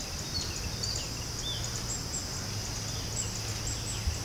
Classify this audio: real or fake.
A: real